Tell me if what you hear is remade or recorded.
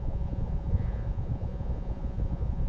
remade